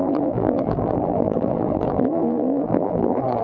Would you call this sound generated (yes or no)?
yes